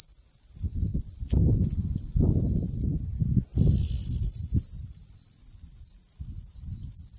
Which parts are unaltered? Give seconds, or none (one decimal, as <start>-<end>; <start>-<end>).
0.0-7.2

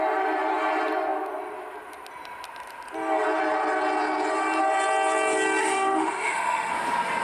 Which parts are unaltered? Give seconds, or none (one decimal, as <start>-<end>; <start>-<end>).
0.0-5.6; 6.7-7.2

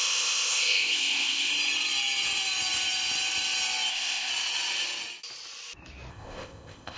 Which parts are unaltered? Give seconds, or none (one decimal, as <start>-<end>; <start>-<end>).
1.5-3.9; 4.3-6.1